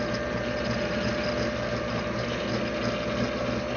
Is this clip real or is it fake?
real